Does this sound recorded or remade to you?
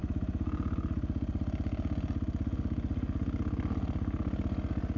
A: recorded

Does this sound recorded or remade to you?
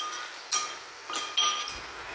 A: recorded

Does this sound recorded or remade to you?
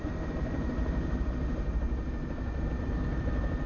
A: recorded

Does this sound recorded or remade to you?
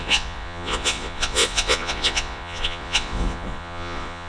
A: remade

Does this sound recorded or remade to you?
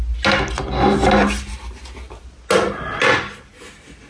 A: recorded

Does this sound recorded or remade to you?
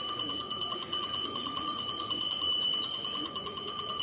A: remade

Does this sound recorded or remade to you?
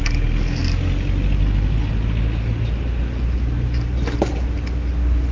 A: recorded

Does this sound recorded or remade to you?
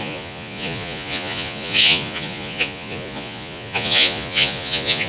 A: remade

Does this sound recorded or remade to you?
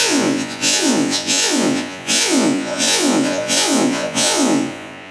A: remade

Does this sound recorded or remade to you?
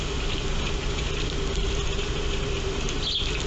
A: recorded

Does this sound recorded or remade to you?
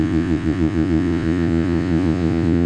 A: remade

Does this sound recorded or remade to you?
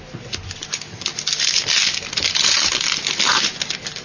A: recorded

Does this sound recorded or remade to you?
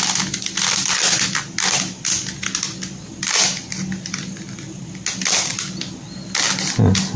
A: recorded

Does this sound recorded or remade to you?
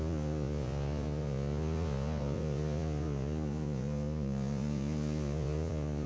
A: remade